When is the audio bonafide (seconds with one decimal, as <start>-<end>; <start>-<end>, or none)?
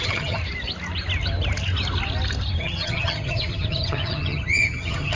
0.4-2.6